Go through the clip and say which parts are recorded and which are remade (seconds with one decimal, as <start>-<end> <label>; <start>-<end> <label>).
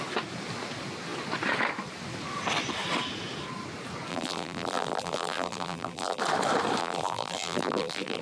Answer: 0.0-4.1 recorded; 4.1-6.2 remade; 6.2-6.8 recorded; 6.8-8.2 remade